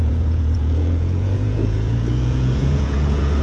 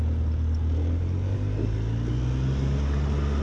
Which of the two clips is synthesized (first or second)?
first